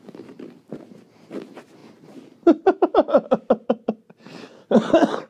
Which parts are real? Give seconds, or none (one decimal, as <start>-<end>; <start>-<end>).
0.0-5.3